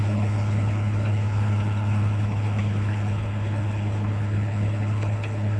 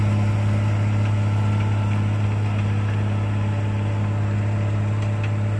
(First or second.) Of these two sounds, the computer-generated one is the first